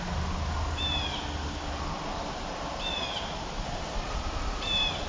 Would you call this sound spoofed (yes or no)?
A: no